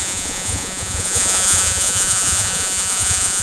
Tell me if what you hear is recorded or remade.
remade